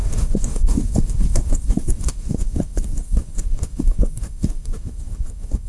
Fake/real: fake